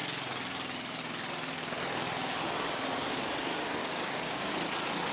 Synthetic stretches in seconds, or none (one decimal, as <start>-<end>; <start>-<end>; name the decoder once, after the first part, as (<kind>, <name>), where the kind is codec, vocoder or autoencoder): 3.8-4.5 (codec, DAC)